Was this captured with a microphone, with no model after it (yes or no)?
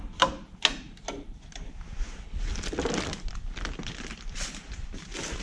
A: yes